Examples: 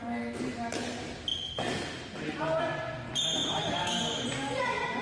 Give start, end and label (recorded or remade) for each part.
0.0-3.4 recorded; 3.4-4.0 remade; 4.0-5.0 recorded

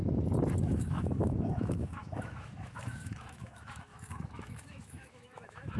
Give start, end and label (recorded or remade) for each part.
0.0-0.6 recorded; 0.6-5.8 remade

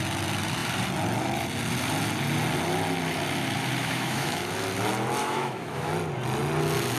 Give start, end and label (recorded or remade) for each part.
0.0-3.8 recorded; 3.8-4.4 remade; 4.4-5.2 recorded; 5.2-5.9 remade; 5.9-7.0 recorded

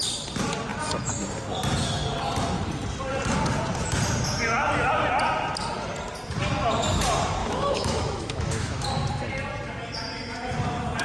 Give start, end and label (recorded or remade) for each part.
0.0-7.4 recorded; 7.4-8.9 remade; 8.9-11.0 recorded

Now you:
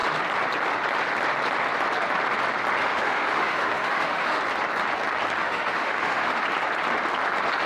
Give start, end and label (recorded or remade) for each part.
0.0-2.8 recorded; 2.8-4.4 remade; 4.4-5.4 recorded; 5.4-6.4 remade; 6.4-7.7 recorded

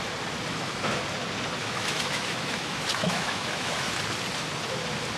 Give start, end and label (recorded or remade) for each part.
0.0-0.5 recorded; 0.5-1.0 remade; 1.0-1.6 recorded; 1.6-3.9 remade; 3.9-5.2 recorded